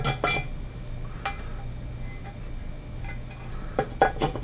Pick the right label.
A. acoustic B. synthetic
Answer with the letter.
A